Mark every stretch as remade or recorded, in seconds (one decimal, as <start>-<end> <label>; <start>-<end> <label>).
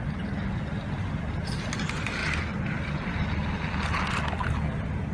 0.0-5.1 recorded